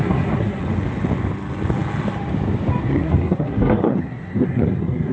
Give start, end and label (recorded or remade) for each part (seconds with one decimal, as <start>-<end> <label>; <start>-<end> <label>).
0.0-0.6 remade; 0.6-2.9 recorded; 2.9-5.1 remade